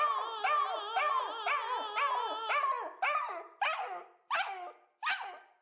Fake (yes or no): no